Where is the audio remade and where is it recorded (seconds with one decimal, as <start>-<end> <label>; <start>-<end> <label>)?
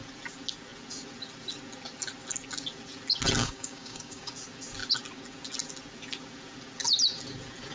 0.0-3.4 recorded; 3.4-4.3 remade; 4.3-7.7 recorded